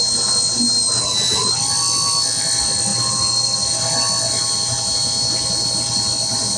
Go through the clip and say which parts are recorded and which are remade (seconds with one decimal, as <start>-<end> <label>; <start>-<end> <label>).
0.0-6.6 recorded